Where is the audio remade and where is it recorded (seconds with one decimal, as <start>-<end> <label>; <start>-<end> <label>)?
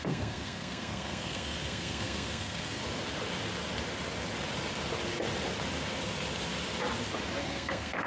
0.0-2.8 remade; 2.8-7.4 recorded; 7.4-8.1 remade